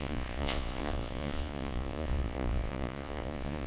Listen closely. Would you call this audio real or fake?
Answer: fake